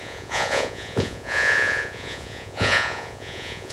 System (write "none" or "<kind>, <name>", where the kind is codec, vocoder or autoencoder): vocoder, Vocos